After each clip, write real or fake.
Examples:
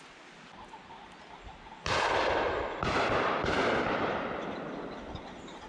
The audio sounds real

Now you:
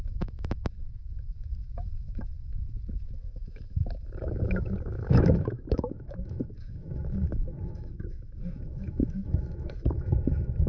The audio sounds fake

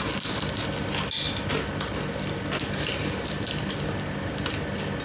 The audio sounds real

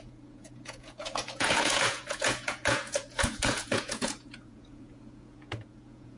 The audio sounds fake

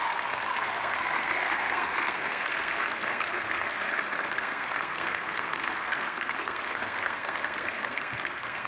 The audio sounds fake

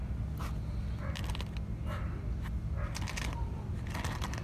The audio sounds real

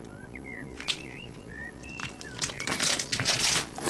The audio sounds fake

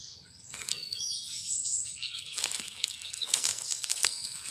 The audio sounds fake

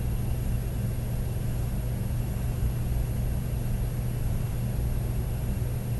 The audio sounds real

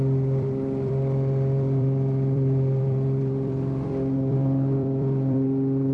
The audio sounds fake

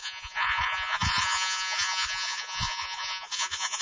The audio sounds fake